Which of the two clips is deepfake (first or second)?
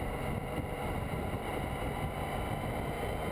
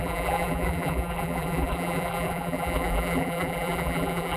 second